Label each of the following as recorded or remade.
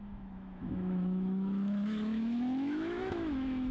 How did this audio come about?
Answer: remade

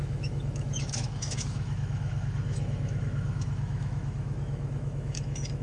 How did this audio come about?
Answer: remade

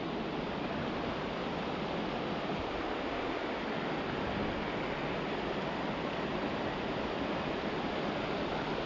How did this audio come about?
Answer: recorded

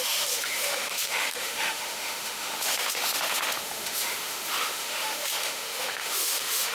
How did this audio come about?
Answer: remade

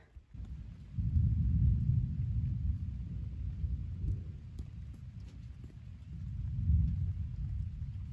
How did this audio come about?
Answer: recorded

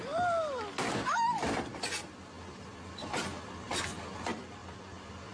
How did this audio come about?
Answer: recorded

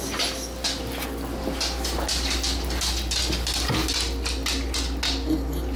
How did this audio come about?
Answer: recorded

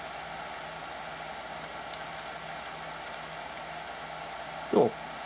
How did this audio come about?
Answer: recorded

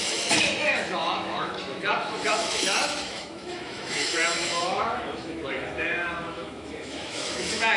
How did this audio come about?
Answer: remade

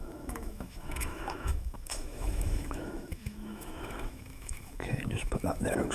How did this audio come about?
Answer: remade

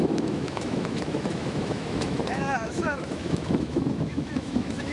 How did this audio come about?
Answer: remade